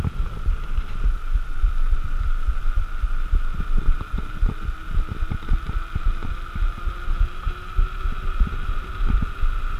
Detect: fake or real real